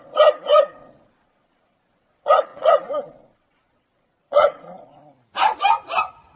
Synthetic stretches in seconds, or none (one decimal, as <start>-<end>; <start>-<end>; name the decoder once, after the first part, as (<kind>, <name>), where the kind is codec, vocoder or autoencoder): 0.0-5.0 (vocoder, Vocos)